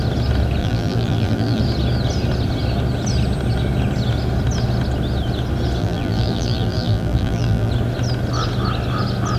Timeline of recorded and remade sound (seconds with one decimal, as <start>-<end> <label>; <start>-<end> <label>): 0.0-0.6 recorded; 0.6-1.6 remade; 1.6-5.8 recorded; 5.8-7.7 remade; 7.7-9.4 recorded